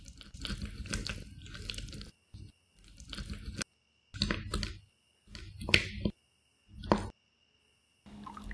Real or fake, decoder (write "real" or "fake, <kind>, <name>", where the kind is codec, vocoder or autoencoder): real